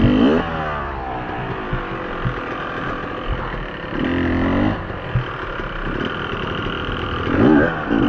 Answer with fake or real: real